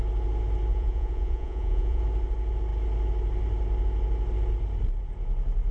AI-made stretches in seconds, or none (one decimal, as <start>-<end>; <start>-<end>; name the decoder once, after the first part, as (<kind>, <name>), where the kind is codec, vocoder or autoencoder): 0.7-2.0 (vocoder, Vocos)